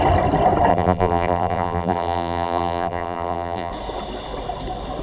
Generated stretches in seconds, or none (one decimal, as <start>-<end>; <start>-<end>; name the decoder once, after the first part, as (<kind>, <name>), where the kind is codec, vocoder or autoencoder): 0.7-3.7 (vocoder, BigVGAN v2)